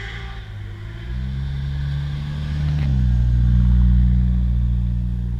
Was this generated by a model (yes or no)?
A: no